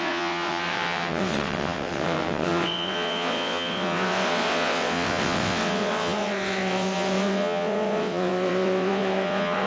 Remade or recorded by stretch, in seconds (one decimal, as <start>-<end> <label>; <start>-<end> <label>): 0.0-9.7 remade